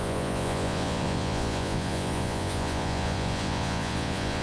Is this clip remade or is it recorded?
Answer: remade